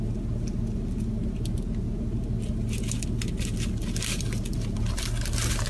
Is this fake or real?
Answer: real